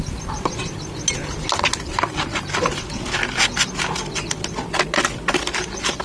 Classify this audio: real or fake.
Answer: real